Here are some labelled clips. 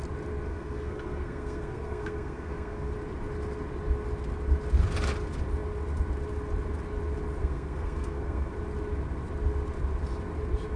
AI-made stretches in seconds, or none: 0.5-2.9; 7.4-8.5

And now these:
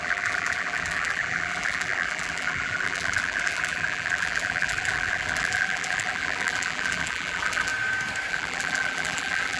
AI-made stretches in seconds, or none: 0.0-7.7; 8.3-9.6